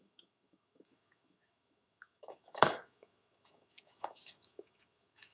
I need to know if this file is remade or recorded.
remade